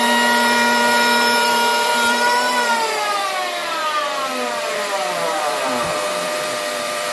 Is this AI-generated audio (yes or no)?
yes